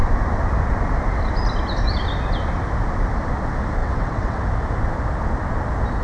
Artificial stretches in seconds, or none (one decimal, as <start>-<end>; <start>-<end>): 3.8-4.4